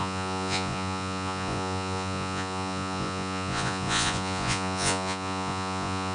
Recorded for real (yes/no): no